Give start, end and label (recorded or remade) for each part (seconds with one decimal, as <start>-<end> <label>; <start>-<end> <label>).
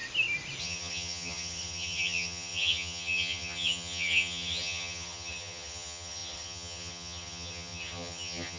0.0-0.6 recorded; 0.6-8.6 remade